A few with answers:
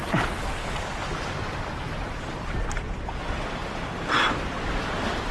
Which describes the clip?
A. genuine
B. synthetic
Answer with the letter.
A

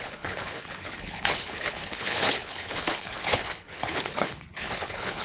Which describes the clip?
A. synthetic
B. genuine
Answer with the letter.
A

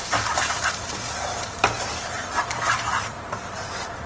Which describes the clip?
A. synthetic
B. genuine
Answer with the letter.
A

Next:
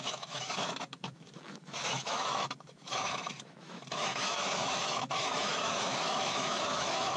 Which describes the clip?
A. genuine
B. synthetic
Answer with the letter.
B